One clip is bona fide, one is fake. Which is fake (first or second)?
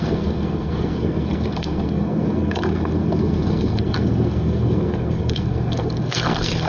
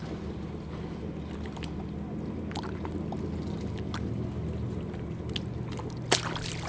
first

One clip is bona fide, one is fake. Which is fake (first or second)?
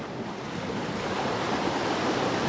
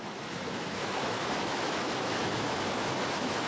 second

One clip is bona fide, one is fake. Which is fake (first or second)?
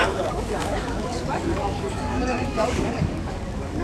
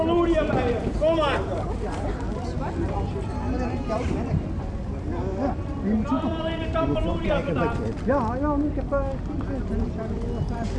first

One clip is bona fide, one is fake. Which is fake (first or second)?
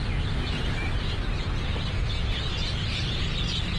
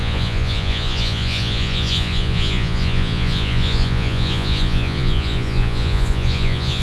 second